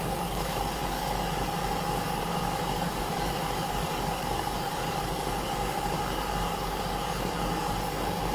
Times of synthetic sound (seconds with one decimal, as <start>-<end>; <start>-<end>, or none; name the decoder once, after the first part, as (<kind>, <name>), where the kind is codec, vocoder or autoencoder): 0.0-8.3 (codec, DAC)